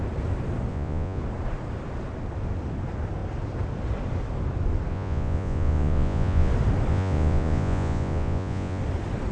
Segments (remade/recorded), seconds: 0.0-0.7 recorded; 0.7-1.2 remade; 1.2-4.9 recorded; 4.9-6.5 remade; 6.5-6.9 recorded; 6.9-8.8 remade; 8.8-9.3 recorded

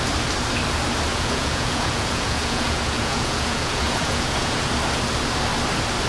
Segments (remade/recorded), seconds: 0.0-1.1 recorded; 1.1-4.7 remade; 4.7-6.1 recorded

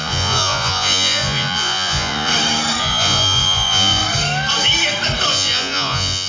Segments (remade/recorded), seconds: 0.0-2.3 remade; 2.3-2.8 recorded; 2.8-4.0 remade; 4.0-5.3 recorded; 5.3-6.3 remade

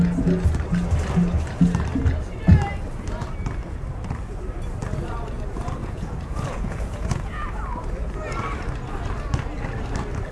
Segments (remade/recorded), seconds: 0.0-5.8 recorded; 5.8-7.3 remade; 7.3-10.3 recorded